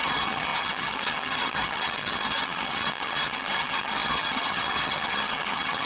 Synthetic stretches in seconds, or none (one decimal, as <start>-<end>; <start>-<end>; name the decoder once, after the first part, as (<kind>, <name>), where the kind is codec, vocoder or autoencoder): 0.0-5.9 (vocoder, HiFi-GAN)